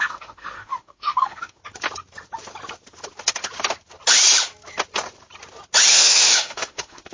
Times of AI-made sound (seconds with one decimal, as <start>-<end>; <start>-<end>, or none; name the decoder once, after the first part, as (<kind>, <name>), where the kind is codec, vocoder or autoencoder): 0.0-1.6 (autoencoder, DAC-VAE); 5.9-7.1